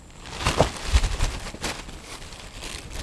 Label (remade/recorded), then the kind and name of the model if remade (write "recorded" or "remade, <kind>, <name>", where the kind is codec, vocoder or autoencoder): recorded